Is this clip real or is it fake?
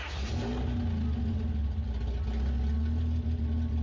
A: real